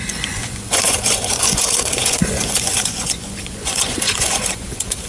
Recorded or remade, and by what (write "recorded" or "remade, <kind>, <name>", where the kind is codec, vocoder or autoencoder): remade, vocoder, Vocos